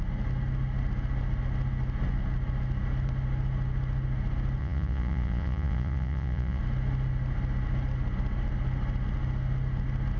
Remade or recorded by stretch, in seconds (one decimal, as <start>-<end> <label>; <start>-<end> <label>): 0.0-4.6 recorded; 4.6-6.6 remade; 6.6-10.2 recorded